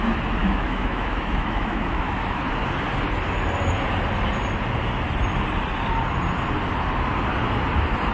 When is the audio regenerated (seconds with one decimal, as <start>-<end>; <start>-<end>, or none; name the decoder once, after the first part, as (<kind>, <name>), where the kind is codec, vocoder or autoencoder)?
0.4-2.4 (autoencoder, DAC-VAE)